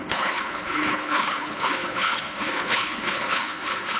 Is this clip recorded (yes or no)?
no